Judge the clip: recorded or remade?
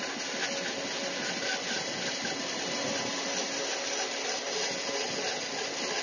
recorded